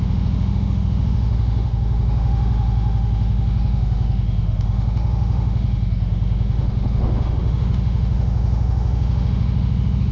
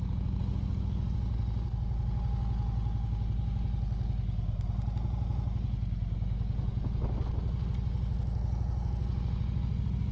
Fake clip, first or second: first